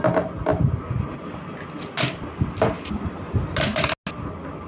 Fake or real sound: real